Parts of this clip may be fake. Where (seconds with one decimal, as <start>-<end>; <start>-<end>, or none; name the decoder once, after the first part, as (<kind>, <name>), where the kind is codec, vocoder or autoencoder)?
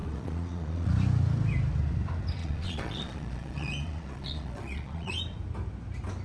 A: 0.0-0.9 (vocoder, Vocos); 2.4-5.1